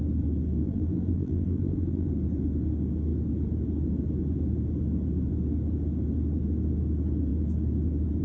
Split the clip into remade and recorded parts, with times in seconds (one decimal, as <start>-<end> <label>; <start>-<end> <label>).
0.0-0.6 recorded; 0.6-2.1 remade; 2.1-8.2 recorded